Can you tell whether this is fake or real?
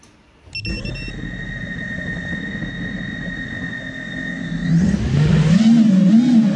real